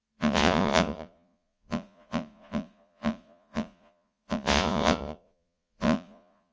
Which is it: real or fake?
fake